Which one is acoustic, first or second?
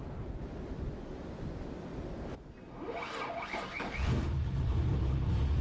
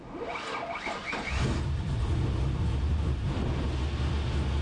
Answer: first